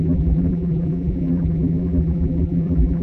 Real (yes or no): no